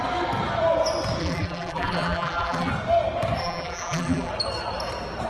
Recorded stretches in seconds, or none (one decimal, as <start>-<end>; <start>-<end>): 0.0-1.2; 2.7-3.4; 4.3-5.3

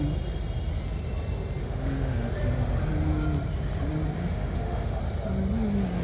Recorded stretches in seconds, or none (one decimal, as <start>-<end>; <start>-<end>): 0.0-1.6; 2.3-4.2; 5.0-6.0

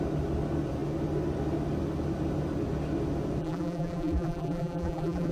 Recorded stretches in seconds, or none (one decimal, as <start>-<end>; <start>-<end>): 0.0-3.4

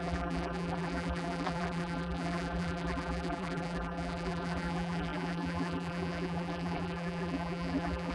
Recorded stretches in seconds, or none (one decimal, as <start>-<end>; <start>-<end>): none

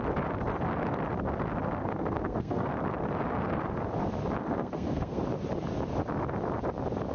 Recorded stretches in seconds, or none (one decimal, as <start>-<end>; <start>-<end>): 0.0-1.8; 2.7-4.4; 5.2-7.1

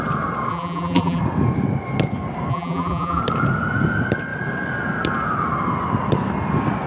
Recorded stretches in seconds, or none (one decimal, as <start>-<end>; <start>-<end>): 0.0-0.5; 1.2-2.5; 3.2-6.9

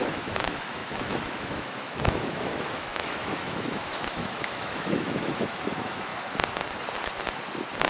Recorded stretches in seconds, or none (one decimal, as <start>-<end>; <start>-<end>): 6.1-7.9

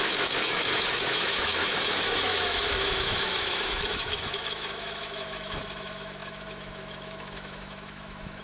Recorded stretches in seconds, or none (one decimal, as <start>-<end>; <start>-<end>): none